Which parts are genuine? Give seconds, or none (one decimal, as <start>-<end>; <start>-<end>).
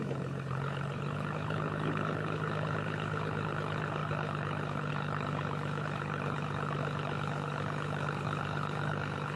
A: none